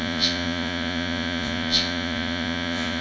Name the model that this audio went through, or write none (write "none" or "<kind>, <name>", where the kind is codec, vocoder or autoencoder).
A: vocoder, Vocos